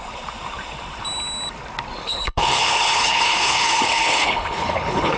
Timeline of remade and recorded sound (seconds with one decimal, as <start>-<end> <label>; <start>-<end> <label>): 0.0-2.0 recorded; 2.0-5.2 remade